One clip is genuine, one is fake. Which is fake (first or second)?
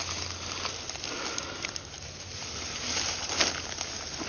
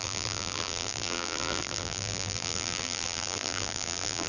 second